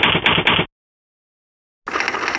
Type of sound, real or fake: real